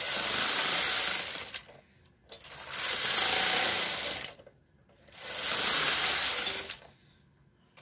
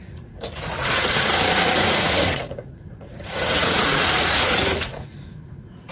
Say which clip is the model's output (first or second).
second